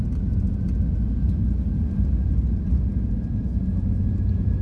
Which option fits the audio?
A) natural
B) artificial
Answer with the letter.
A